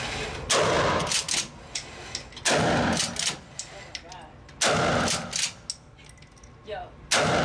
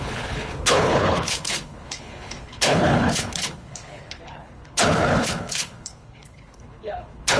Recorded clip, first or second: first